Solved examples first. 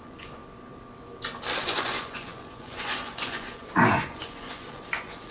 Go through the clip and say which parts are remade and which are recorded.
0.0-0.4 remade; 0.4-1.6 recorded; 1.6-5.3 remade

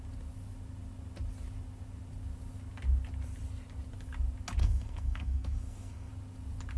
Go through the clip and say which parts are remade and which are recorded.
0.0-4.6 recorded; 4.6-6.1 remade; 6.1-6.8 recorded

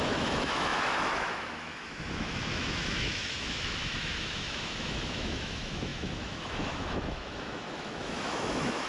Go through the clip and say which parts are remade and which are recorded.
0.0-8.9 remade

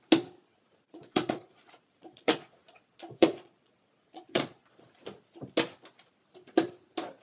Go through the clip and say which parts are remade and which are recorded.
0.0-0.5 recorded; 0.5-4.8 remade; 4.8-7.2 recorded

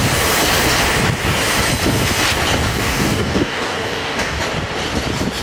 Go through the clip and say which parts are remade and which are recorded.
0.0-2.7 recorded; 2.7-4.4 remade; 4.4-5.4 recorded

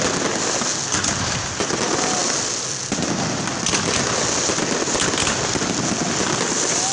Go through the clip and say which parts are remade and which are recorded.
0.0-6.9 recorded

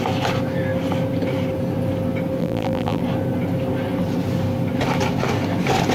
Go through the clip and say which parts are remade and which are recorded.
0.0-2.4 recorded; 2.4-3.0 remade; 3.0-5.9 recorded

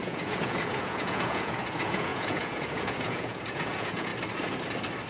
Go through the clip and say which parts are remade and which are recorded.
0.0-4.1 remade; 4.1-5.1 recorded